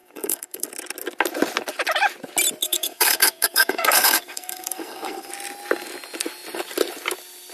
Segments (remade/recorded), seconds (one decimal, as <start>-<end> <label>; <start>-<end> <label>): 0.0-0.7 remade; 0.7-2.6 recorded; 2.6-5.3 remade; 5.3-7.5 recorded